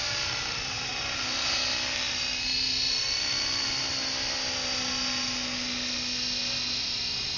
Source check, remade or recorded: recorded